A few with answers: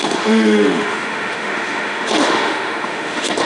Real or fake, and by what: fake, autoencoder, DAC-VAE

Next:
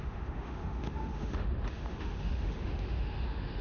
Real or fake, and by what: fake, autoencoder, DAC-VAE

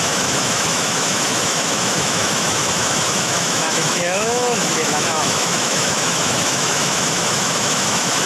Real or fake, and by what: fake, autoencoder, DAC-VAE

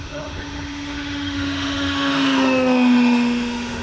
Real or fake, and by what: fake, autoencoder, DAC-VAE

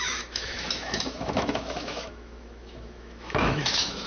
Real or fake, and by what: fake, autoencoder, DAC-VAE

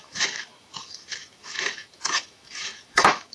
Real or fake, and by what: fake, autoencoder, DAC-VAE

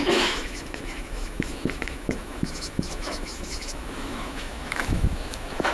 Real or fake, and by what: fake, autoencoder, DAC-VAE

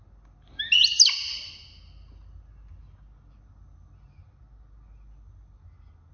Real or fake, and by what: real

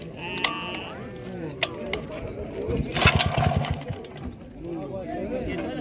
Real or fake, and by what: real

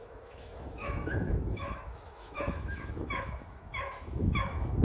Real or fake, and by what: fake, autoencoder, DAC-VAE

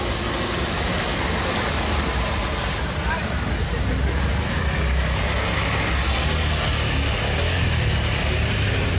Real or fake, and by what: real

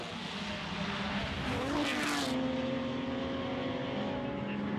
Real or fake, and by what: real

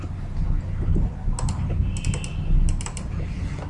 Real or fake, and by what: real